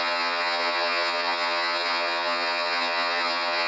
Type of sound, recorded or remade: remade